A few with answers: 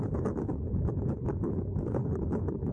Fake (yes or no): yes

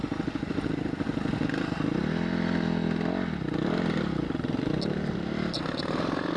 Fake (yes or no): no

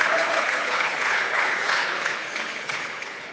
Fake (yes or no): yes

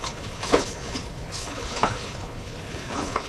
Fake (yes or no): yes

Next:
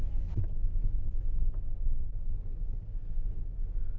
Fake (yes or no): no